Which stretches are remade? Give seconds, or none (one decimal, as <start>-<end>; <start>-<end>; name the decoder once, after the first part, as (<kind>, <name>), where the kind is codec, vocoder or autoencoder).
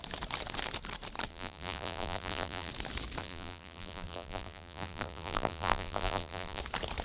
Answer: 1.3-2.7 (vocoder, BigVGAN v2); 3.2-6.6